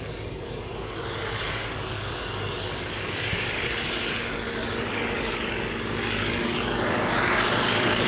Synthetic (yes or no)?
yes